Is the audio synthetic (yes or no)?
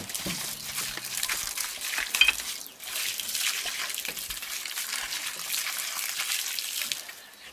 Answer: no